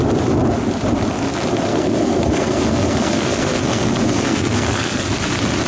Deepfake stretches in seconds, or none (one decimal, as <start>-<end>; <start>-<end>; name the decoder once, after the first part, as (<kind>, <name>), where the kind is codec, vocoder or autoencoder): 1.7-5.1 (codec, SNAC)